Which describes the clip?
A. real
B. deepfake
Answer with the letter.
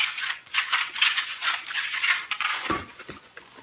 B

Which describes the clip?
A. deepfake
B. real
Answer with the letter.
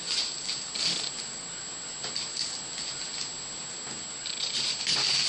B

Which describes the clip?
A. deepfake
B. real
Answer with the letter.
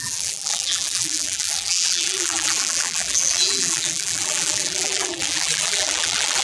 A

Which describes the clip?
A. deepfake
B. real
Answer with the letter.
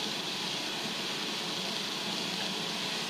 B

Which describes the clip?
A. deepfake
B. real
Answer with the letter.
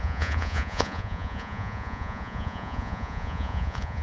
A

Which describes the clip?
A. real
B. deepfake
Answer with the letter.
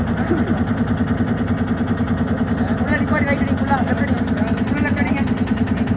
A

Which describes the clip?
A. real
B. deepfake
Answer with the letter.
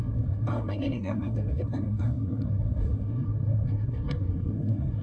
B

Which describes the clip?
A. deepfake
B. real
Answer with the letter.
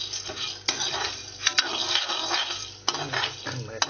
B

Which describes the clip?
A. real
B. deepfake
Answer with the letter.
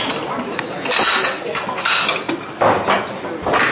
A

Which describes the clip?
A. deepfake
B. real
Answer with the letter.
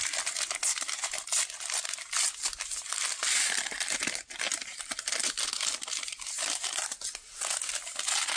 B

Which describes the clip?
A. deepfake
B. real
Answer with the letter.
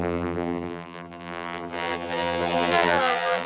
A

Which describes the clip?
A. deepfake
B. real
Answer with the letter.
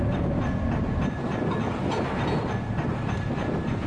B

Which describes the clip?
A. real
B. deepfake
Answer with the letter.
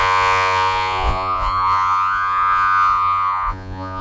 B